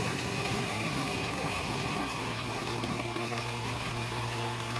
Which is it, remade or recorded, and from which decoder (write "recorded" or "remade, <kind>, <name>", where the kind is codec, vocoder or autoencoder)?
remade, codec, SNAC